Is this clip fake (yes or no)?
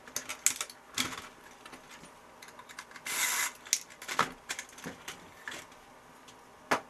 no